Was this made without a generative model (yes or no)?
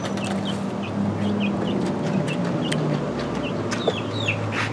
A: yes